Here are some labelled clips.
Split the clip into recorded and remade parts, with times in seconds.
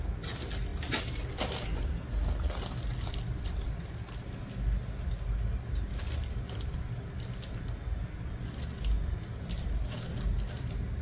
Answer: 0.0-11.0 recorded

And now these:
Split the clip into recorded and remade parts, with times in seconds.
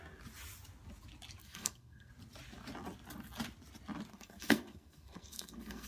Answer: 0.0-1.4 recorded; 1.4-2.1 remade; 2.1-4.1 recorded; 4.1-5.9 remade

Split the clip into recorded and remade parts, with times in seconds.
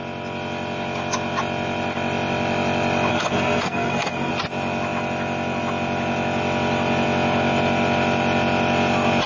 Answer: 0.0-3.1 recorded; 3.1-4.3 remade; 4.3-9.3 recorded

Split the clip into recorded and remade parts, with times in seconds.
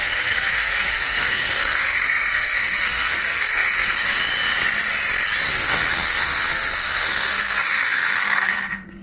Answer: 0.0-4.2 remade; 4.2-5.5 recorded; 5.5-9.0 remade